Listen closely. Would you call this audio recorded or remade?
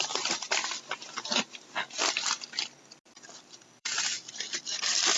remade